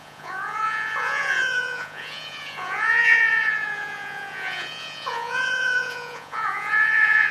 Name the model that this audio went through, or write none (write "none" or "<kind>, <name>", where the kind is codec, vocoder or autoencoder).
vocoder, Vocos